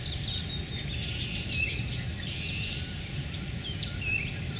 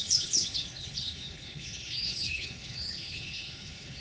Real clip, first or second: first